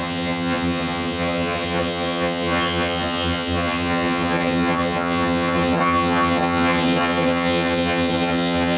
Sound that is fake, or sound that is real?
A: fake